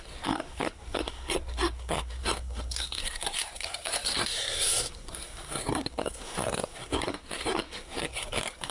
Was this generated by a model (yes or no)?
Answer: yes